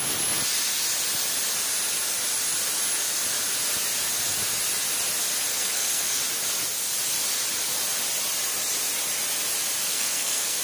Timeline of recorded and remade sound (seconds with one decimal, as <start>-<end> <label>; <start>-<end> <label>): 0.0-5.5 recorded; 5.5-6.2 remade; 6.2-9.9 recorded; 9.9-10.6 remade